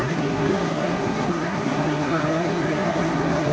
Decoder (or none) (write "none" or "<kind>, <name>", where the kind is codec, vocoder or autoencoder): codec, SNAC